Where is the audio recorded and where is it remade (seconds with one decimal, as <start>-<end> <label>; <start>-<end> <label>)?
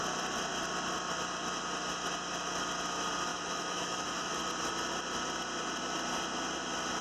0.0-3.3 recorded; 3.3-4.3 remade; 4.3-7.0 recorded